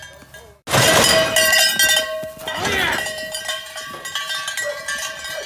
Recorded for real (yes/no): yes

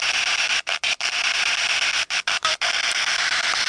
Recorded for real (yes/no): yes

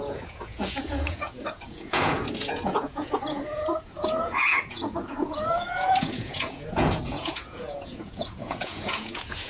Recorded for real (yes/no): no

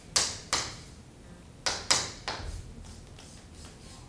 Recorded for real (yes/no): yes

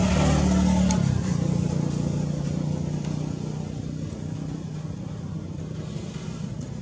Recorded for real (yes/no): yes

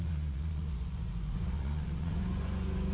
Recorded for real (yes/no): no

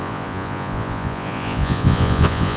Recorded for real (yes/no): no